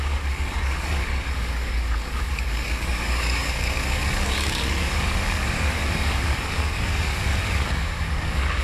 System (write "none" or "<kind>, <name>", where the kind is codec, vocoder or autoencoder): codec, DAC